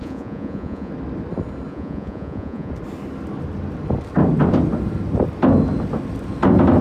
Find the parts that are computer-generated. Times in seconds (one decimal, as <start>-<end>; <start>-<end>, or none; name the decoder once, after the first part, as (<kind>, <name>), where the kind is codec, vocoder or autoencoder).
0.0-0.9 (vocoder, Vocos); 1.7-2.7